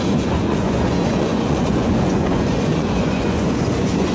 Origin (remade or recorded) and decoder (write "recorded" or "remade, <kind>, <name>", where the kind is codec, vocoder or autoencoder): remade, vocoder, Vocos